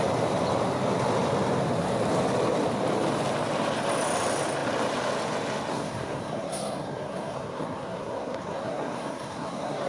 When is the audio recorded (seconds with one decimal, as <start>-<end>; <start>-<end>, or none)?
0.0-5.7